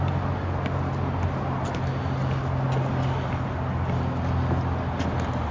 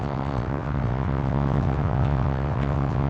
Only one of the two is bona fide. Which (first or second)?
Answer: first